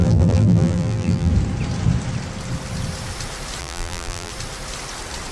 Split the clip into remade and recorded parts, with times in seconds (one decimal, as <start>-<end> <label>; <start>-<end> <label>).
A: 0.0-1.3 remade; 1.3-3.6 recorded; 3.6-4.3 remade; 4.3-5.3 recorded